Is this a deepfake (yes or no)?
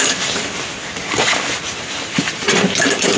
no